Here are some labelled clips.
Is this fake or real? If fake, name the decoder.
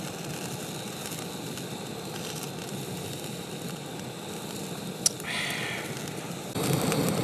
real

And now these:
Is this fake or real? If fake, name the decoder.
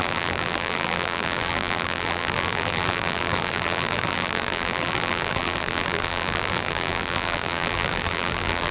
fake, vocoder, BigVGAN v2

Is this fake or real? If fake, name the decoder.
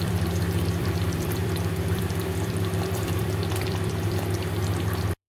fake, vocoder, BigVGAN v2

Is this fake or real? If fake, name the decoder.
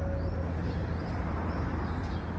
real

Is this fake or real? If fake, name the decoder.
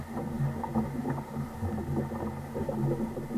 real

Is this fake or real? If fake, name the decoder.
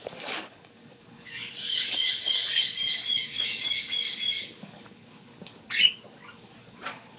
fake, codec, DAC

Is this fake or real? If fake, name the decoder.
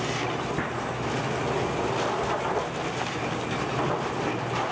real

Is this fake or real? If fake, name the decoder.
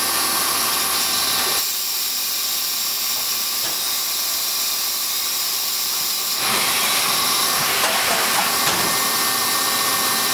fake, vocoder, BigVGAN v2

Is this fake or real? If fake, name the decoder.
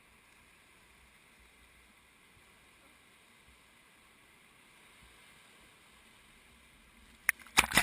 real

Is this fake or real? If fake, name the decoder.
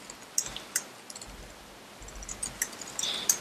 real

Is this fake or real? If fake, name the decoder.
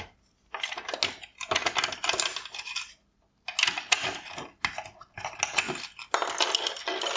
real